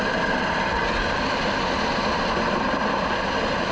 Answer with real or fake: real